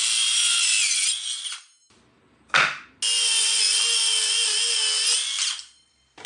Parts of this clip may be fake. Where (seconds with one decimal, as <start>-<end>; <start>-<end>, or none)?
none

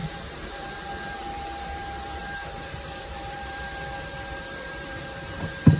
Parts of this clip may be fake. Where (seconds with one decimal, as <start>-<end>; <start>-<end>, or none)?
0.0-5.8

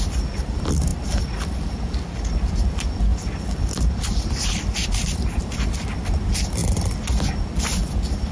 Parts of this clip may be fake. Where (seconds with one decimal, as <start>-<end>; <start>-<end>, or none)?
none

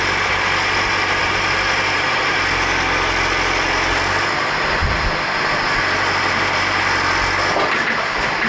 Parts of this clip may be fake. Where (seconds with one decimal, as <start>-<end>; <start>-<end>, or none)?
none

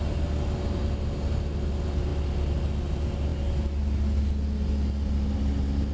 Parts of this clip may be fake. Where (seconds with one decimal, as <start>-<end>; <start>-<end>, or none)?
none

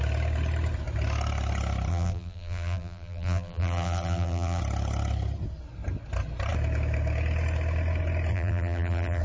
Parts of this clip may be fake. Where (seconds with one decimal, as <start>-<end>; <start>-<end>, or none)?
1.9-4.6; 8.3-9.2

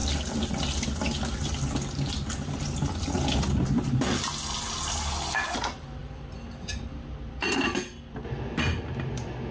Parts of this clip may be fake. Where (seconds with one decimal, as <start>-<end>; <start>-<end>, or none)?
none

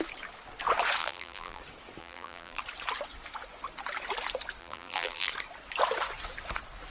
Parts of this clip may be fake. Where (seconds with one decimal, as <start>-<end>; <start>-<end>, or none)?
1.0-1.6; 2.0-2.6; 4.6-5.3